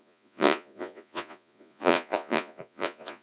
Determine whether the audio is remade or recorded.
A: remade